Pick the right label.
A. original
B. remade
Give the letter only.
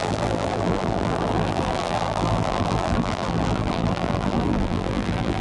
B